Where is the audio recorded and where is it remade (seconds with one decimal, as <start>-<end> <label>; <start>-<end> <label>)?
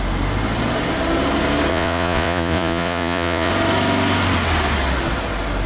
0.0-1.7 recorded; 1.7-3.5 remade; 3.5-5.7 recorded